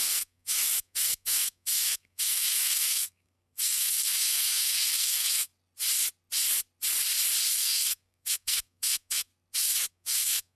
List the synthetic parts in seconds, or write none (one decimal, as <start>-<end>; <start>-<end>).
0.0-5.5; 7.5-9.3; 9.9-10.6